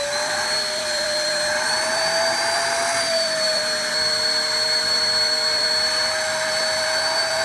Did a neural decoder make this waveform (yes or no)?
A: yes